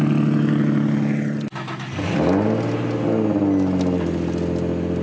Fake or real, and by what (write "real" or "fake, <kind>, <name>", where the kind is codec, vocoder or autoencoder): real